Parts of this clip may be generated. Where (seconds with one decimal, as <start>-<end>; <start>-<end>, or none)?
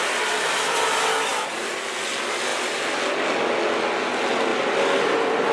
1.3-2.1; 4.5-5.0